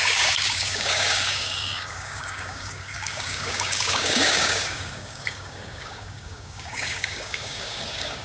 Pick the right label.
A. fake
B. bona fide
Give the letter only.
A